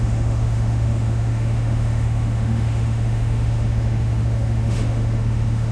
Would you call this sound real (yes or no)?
no